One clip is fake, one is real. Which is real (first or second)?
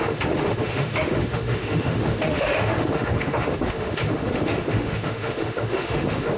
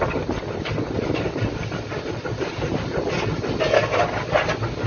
second